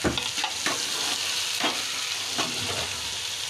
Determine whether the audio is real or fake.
real